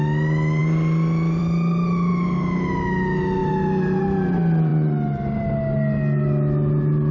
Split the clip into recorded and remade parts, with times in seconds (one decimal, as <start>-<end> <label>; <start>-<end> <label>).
0.0-7.1 recorded